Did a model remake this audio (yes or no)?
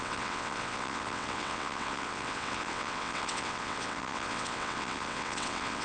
yes